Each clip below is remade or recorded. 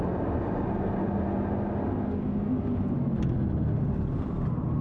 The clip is recorded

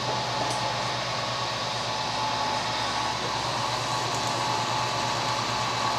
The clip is recorded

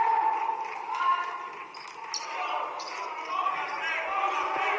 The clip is recorded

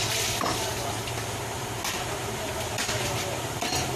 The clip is recorded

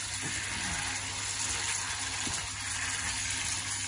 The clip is recorded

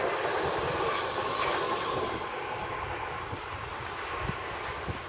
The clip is recorded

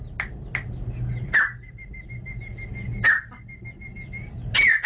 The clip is recorded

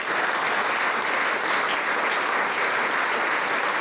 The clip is recorded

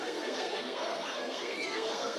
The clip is remade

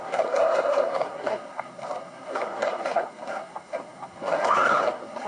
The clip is remade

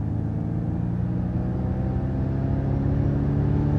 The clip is recorded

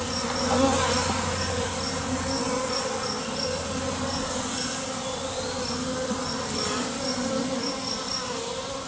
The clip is recorded